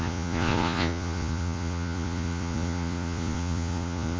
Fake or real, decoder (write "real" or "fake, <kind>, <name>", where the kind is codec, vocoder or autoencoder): fake, vocoder, Vocos